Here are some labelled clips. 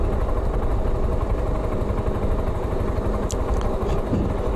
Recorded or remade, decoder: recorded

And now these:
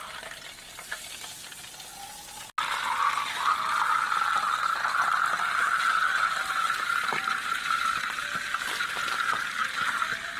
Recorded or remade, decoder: recorded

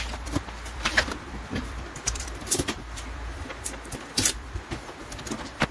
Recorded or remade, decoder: remade, vocoder, BigVGAN v2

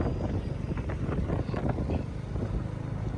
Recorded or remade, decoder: recorded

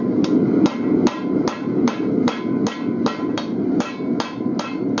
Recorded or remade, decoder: recorded